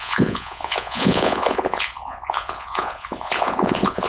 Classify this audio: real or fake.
fake